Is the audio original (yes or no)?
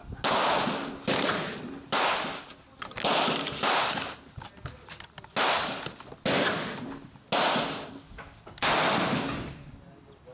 yes